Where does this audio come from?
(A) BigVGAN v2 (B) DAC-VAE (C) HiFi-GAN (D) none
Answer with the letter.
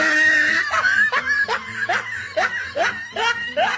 D